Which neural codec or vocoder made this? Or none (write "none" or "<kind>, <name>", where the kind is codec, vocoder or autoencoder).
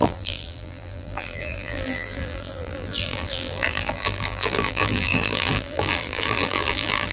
vocoder, BigVGAN v2